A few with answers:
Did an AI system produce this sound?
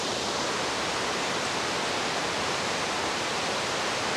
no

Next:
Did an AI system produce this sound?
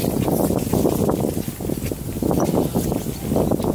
no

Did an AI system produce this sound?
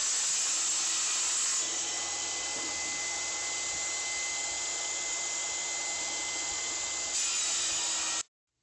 no